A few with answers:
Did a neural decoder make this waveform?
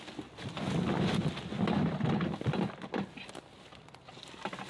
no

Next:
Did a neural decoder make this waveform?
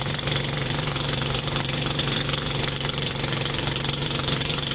yes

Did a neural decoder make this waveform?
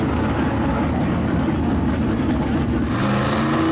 no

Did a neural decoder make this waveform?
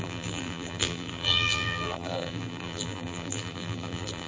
yes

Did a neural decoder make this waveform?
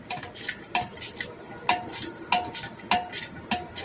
no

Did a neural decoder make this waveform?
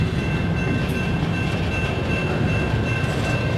no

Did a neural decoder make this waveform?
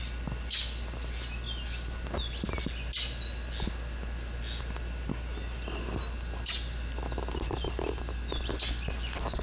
no